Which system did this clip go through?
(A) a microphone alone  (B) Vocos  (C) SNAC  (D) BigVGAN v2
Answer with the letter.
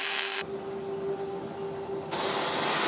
A